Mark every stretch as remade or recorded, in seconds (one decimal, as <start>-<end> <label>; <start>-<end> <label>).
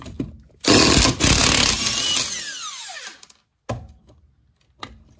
0.0-5.2 recorded